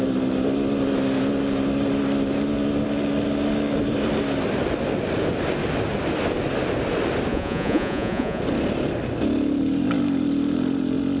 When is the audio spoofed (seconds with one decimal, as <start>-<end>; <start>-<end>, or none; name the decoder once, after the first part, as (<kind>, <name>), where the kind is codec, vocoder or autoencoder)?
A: 7.3-8.4 (vocoder, Vocos)